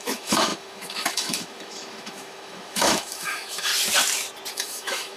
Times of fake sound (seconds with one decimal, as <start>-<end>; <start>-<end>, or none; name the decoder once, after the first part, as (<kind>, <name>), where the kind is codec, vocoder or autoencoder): 0.0-3.7 (autoencoder, DAC-VAE); 4.5-5.2